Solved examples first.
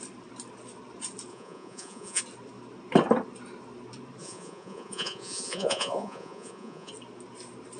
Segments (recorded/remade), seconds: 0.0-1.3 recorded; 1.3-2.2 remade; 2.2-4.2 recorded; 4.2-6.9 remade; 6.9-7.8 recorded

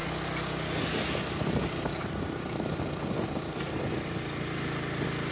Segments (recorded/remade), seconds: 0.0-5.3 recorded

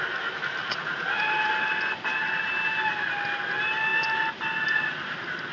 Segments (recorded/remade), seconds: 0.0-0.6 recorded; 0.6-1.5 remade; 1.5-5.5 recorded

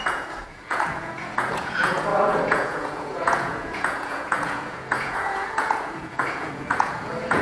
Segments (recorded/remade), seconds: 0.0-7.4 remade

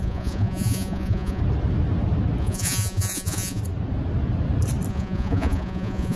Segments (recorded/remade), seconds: 0.0-1.4 remade; 1.4-2.4 recorded; 2.4-3.6 remade; 3.6-4.9 recorded; 4.9-6.2 remade

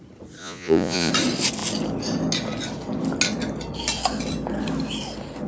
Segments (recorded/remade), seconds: 0.0-0.4 recorded; 0.4-1.1 remade; 1.1-5.5 recorded

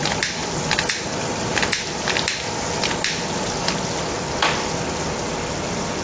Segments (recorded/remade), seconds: 0.0-6.0 recorded